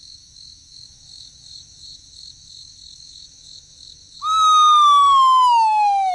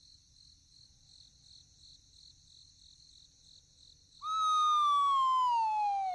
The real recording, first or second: second